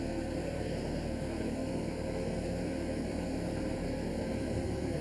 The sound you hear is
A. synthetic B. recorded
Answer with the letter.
A